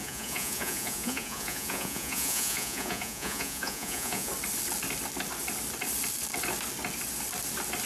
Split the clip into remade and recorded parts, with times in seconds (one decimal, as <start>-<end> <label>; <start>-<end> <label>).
0.0-4.3 remade; 4.3-7.9 recorded